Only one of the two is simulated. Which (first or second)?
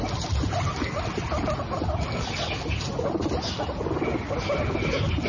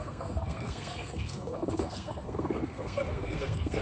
second